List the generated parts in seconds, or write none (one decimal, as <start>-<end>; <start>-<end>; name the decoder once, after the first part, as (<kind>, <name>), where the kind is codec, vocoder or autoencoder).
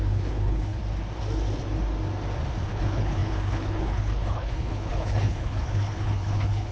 0.0-0.8 (codec, HILCodec); 2.7-6.7